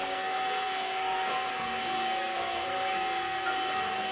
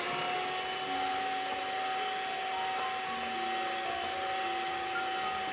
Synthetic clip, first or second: first